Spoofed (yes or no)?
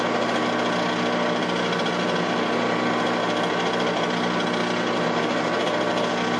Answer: no